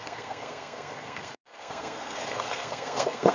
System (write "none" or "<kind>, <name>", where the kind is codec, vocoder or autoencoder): codec, SNAC